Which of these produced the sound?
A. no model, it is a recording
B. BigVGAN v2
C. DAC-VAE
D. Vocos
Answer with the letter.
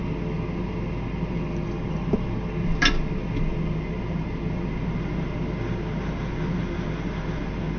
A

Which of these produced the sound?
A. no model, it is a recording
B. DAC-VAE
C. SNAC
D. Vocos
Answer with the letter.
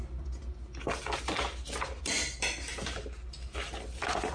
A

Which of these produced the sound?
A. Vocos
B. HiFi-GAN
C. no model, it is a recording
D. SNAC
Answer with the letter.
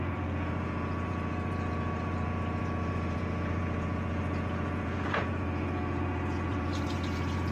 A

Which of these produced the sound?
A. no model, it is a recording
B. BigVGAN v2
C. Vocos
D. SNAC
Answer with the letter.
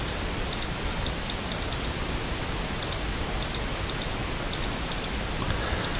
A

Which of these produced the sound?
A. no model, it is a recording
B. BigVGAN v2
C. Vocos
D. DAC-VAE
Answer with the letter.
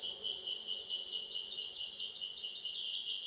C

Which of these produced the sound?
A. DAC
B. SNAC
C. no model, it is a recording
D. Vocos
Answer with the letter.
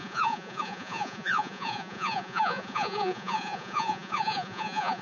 D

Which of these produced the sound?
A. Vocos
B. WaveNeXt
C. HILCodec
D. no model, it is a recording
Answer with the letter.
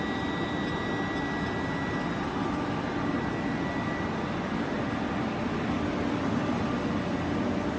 D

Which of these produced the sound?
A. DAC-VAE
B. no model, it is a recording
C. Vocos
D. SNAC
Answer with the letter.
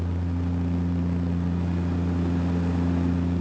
B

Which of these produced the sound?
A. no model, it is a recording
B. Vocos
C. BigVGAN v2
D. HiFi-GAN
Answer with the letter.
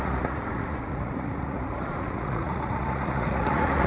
B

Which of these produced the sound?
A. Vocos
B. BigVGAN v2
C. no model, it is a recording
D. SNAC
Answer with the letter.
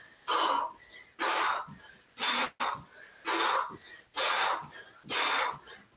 C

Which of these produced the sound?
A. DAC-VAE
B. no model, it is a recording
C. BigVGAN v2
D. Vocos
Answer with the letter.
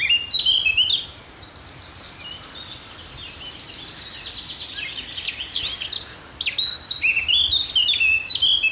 B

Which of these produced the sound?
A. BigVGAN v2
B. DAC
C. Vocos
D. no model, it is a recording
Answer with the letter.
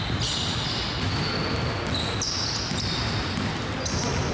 D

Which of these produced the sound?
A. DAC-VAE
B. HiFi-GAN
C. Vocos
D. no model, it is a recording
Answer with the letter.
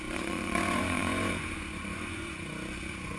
C